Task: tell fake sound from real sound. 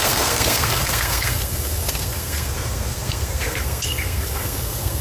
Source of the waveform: fake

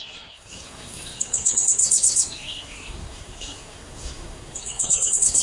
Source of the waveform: fake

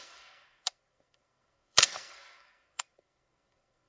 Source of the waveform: fake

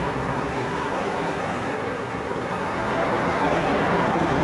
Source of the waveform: fake